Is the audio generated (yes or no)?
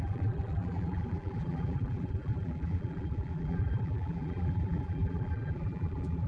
yes